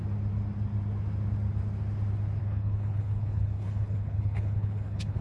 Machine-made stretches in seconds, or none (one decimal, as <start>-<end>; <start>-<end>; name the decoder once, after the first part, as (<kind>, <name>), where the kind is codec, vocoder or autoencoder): 2.4-5.2 (codec, HILCodec)

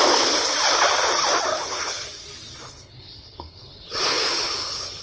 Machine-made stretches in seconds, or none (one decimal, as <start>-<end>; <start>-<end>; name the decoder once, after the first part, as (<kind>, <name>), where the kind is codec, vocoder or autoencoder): 1.5-2.2 (codec, HILCodec); 2.6-5.0

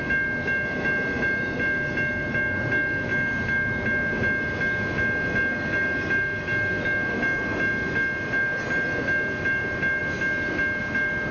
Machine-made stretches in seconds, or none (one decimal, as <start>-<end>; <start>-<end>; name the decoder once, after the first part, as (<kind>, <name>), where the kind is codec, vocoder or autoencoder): none